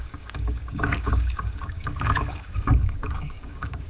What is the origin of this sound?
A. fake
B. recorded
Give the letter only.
A